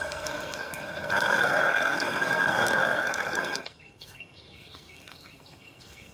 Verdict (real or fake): fake